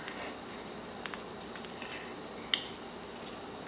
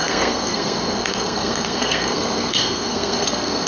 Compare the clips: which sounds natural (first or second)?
first